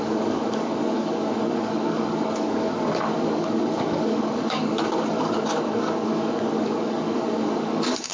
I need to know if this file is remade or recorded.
remade